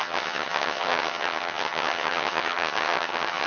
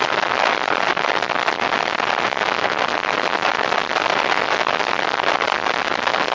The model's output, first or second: first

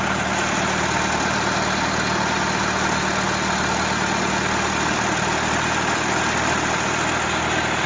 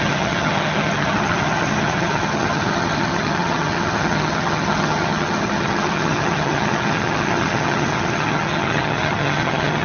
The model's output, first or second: second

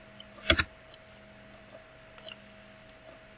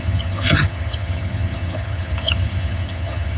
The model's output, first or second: second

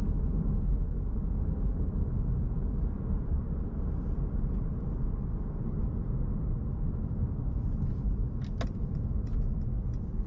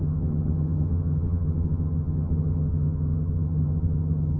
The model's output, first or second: second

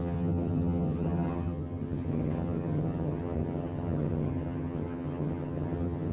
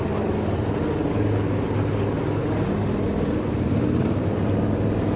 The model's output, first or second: first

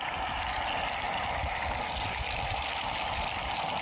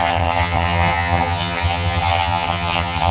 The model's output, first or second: second